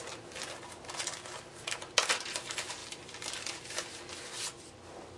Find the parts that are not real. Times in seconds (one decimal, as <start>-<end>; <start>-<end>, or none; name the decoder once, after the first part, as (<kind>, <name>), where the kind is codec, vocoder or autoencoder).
none